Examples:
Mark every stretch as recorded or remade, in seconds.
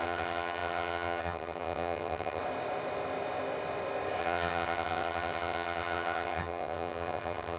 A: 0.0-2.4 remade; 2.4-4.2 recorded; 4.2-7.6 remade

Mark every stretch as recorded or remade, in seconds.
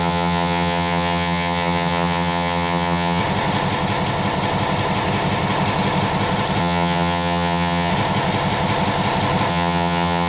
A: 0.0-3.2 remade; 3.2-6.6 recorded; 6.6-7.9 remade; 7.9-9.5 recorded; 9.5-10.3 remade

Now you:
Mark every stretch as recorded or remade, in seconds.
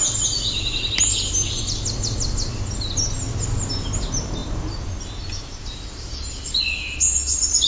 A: 0.0-7.7 recorded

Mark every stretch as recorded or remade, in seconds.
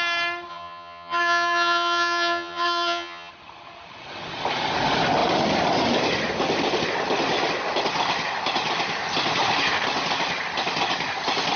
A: 0.0-0.5 recorded; 0.5-3.3 remade; 3.3-11.6 recorded